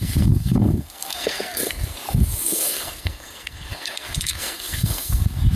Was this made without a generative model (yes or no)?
no